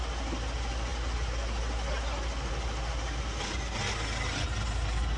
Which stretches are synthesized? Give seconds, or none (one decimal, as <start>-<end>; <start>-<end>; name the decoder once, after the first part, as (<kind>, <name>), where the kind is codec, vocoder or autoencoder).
none